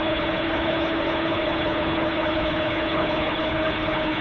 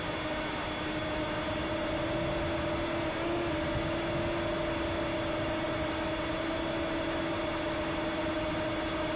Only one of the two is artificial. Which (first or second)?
first